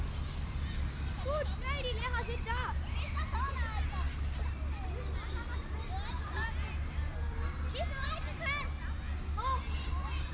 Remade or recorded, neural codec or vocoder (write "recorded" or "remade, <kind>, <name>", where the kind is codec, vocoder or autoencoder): recorded